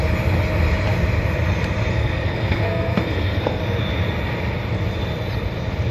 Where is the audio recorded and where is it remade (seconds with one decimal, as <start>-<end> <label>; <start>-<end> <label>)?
0.0-1.9 recorded; 1.9-3.6 remade; 3.6-5.9 recorded